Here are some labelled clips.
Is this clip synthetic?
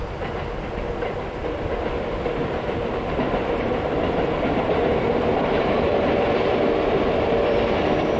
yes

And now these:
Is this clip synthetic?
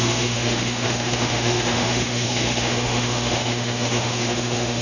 yes